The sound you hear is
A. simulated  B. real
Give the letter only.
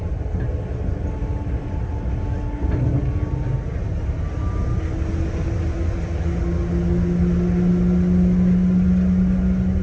B